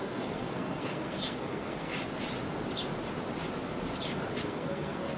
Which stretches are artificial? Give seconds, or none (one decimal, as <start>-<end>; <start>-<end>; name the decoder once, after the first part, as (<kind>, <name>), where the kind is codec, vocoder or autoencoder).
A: 0.0-1.9 (codec, SNAC); 4.4-5.2